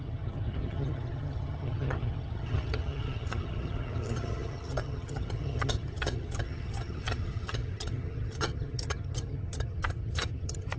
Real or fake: fake